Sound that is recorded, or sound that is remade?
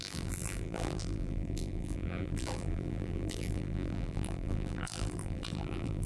remade